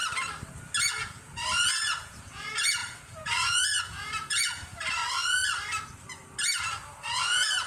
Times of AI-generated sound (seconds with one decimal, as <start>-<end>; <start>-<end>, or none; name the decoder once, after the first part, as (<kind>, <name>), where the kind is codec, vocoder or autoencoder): 0.9-5.0 (vocoder, Vocos); 6.6-7.7